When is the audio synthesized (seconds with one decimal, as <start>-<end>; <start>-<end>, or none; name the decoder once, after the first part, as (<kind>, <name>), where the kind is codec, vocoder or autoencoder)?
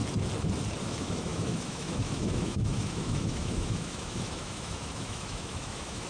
0.8-6.1 (autoencoder, DAC-VAE)